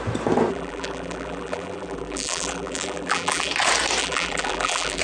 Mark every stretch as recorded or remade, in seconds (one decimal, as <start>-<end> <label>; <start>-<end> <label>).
0.0-0.5 recorded; 0.5-3.5 remade; 3.5-4.0 recorded; 4.0-5.0 remade